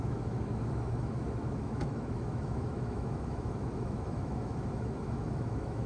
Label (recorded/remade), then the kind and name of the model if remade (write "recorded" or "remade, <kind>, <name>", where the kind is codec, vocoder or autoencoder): remade, autoencoder, DAC-VAE